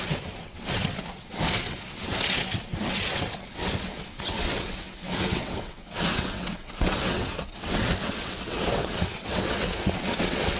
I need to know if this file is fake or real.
fake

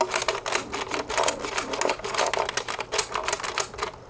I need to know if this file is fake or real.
real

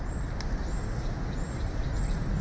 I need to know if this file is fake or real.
real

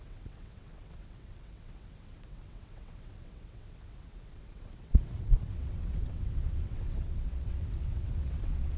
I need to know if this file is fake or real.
fake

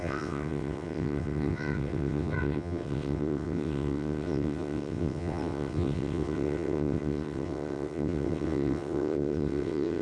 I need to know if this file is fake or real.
fake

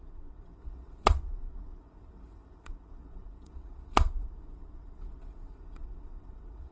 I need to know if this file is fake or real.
fake